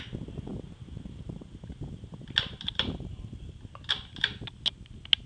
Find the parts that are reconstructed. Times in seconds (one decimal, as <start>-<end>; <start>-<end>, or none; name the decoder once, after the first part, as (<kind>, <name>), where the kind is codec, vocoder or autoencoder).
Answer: 0.5-3.7 (vocoder, BigVGAN v2)